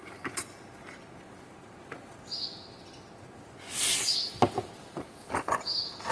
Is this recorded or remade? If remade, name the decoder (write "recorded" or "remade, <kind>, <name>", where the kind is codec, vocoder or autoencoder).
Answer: recorded